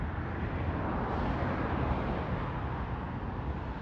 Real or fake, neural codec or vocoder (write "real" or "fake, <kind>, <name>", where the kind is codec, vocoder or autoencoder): real